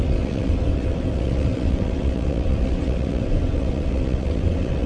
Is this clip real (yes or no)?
no